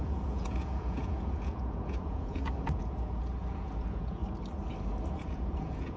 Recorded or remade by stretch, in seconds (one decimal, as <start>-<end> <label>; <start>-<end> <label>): 0.0-4.2 remade; 4.2-5.1 recorded; 5.1-6.0 remade